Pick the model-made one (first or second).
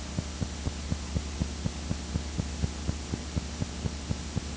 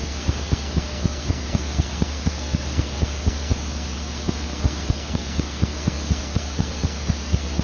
second